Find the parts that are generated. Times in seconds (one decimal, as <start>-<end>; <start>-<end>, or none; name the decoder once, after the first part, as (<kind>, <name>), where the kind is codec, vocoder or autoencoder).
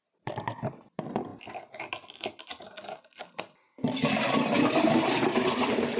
none